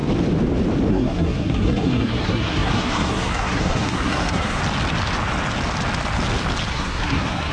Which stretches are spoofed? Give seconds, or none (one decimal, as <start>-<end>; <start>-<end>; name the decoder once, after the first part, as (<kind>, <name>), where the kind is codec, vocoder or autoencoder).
0.9-4.6 (codec, SNAC); 6.7-7.5